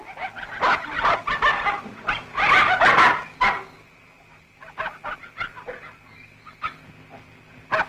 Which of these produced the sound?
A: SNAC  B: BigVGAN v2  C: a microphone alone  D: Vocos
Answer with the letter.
C